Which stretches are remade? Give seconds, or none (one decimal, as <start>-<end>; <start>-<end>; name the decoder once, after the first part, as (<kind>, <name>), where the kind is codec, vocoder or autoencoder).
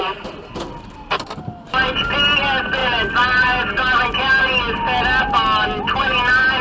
none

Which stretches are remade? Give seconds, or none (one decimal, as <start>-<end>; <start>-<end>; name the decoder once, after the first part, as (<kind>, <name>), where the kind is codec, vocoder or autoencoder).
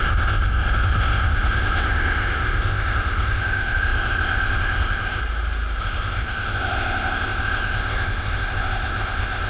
0.0-5.2 (codec, ZipCodec); 5.8-9.5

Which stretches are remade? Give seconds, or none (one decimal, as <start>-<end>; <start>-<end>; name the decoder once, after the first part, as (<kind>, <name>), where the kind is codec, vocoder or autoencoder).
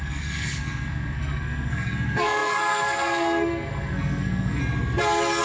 0.0-4.6 (codec, SNAC)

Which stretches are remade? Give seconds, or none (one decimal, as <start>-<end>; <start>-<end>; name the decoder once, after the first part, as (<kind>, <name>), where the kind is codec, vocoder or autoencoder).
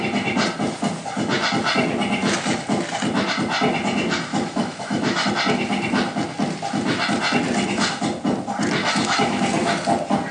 4.3-5.3 (autoencoder, DAC-VAE); 8.8-9.4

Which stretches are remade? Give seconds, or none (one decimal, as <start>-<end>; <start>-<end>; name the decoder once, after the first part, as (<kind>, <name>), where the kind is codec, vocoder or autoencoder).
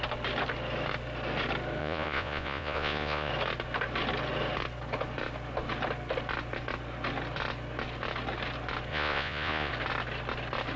1.8-3.3 (vocoder, Vocos); 8.9-9.7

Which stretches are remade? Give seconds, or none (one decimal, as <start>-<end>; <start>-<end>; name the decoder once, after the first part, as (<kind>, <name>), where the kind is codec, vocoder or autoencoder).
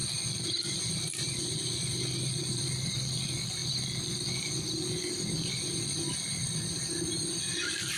0.9-3.6 (vocoder, BigVGAN v2); 5.8-8.0